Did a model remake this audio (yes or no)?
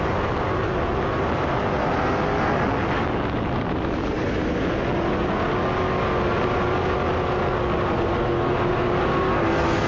no